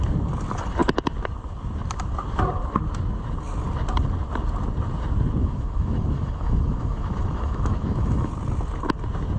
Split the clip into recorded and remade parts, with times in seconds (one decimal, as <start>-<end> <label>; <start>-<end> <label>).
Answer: 0.0-5.4 recorded; 5.4-8.3 remade; 8.3-9.4 recorded